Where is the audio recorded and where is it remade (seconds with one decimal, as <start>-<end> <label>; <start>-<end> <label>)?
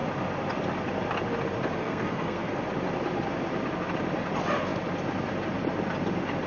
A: 0.0-1.8 recorded; 1.8-2.6 remade; 2.6-6.5 recorded